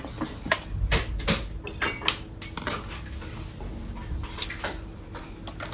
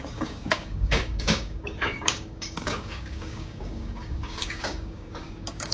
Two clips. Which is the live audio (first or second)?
first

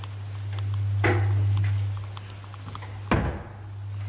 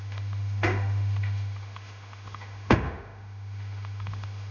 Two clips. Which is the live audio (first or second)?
first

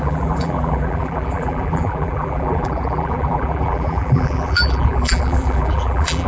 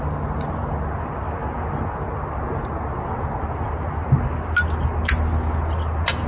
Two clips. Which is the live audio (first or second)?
second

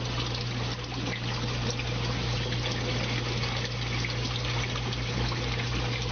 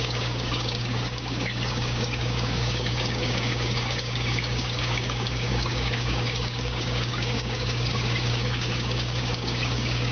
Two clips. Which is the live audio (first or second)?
first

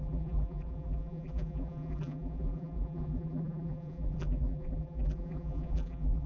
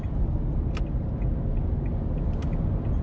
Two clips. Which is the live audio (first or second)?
second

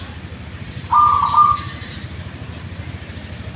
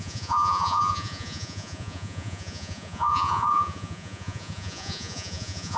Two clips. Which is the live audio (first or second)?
first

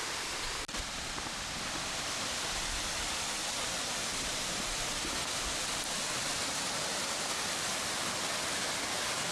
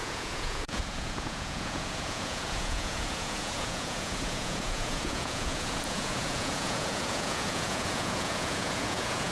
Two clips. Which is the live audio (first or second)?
first